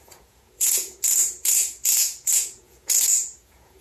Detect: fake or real fake